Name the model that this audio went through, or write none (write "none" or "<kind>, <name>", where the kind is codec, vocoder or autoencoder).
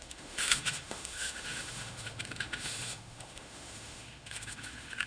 autoencoder, DAC-VAE